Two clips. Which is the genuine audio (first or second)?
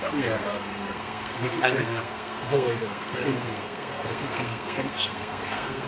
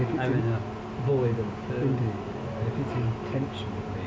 second